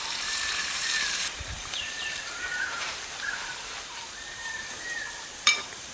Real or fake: fake